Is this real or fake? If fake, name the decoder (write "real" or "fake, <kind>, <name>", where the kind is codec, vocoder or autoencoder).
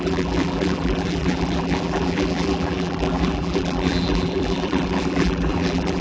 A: fake, vocoder, BigVGAN v2